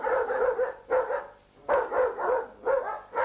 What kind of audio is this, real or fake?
real